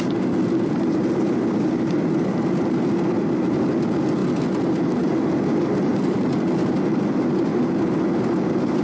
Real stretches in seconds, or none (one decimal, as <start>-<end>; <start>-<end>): 0.0-8.8